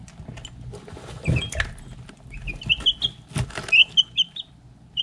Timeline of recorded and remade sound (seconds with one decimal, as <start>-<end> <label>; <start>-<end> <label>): 0.0-5.0 recorded